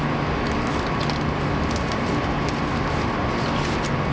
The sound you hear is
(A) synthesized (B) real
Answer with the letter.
B